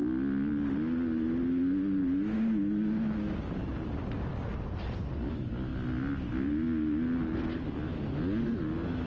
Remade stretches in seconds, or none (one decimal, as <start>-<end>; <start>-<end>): none